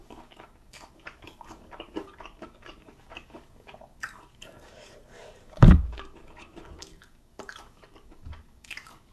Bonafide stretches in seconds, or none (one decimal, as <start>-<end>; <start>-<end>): none